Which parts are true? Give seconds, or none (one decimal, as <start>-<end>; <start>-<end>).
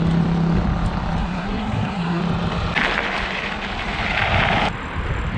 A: 0.0-1.2; 2.2-5.4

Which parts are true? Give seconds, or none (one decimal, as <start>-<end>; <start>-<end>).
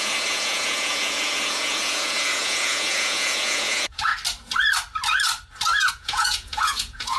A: 4.1-5.9